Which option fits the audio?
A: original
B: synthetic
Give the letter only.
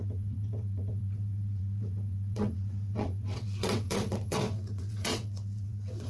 B